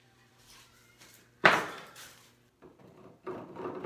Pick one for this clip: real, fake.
fake